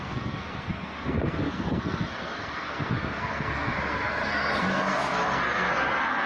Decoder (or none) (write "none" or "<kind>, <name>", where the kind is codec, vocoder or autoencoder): codec, SNAC